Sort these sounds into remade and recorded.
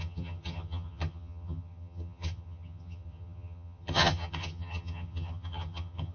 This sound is remade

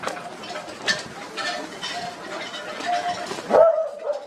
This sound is recorded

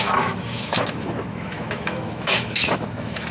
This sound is remade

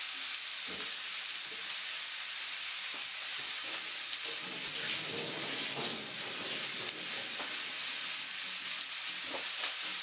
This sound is recorded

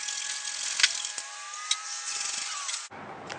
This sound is recorded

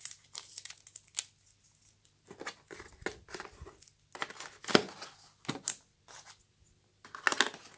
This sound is recorded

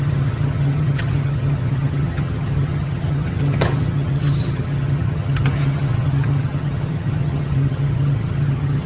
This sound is remade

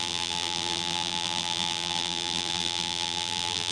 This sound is remade